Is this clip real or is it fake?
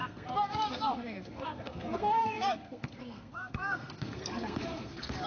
fake